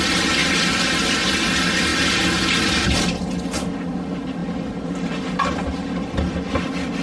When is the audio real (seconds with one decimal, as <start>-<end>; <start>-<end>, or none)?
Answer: 0.0-7.0